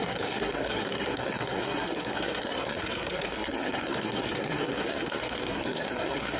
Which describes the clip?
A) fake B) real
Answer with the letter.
A